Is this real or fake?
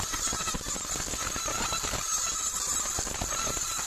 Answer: real